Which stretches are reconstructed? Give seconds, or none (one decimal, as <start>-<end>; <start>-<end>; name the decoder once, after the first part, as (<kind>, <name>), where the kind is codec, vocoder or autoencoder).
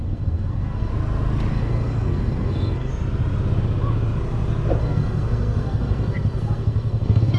0.0-0.9 (codec, SNAC); 1.5-2.9; 4.8-7.4